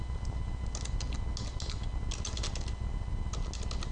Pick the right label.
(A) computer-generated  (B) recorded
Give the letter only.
B